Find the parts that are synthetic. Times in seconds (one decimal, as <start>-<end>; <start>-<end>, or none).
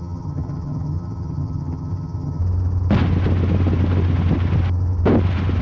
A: 0.0-2.4